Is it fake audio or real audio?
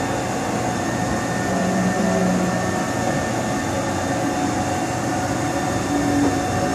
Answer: real